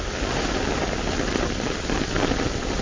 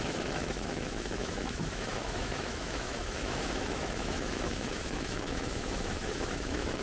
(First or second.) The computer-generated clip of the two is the second